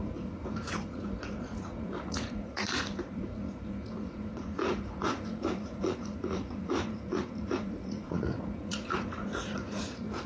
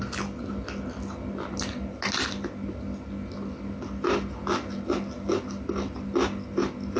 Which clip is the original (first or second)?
second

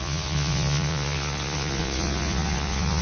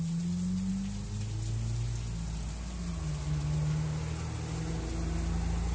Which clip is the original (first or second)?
second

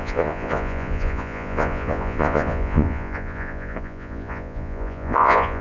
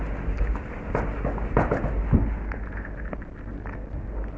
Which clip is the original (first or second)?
second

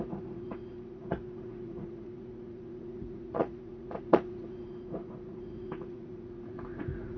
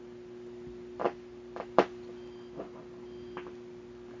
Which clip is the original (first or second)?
second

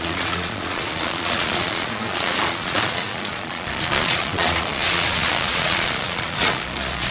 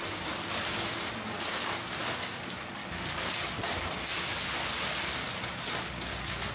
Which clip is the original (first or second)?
second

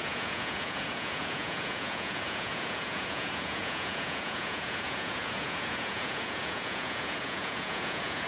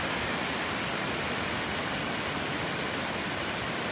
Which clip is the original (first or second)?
second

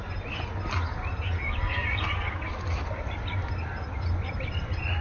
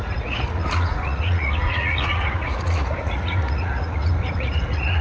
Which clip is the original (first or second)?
first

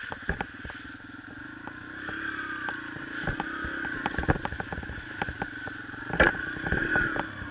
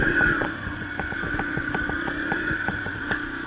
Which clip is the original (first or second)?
first